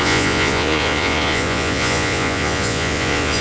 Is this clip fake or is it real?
fake